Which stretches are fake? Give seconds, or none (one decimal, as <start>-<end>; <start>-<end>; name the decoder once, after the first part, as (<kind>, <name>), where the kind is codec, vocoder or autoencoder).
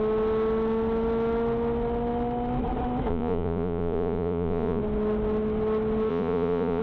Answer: 3.1-4.8 (vocoder, Vocos); 6.1-6.8